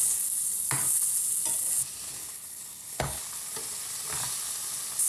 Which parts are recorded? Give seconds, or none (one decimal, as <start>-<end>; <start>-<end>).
0.0-2.2; 3.2-5.1